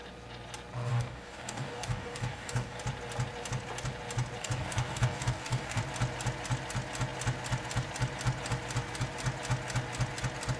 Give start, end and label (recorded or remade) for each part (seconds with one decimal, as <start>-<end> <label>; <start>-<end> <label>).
0.0-0.9 recorded; 0.9-2.8 remade; 2.8-4.4 recorded; 4.4-5.8 remade; 5.8-10.6 recorded